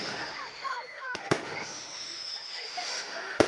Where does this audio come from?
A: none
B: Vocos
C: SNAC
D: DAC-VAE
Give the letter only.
D